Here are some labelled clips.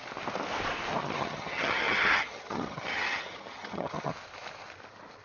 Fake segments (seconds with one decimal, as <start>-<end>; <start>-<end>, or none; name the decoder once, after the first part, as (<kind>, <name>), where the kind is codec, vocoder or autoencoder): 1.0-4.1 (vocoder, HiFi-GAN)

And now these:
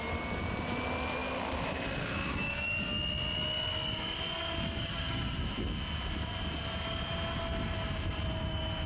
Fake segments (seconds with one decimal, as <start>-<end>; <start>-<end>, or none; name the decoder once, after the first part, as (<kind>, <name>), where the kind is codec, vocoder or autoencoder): 4.8-5.4 (vocoder, HiFi-GAN)

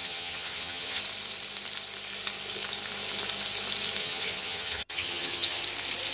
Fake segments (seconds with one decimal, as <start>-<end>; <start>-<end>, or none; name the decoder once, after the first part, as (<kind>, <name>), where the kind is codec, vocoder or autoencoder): 0.0-1.0 (vocoder, HiFi-GAN); 4.0-5.6